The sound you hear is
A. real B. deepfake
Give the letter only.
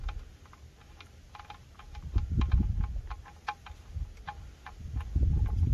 A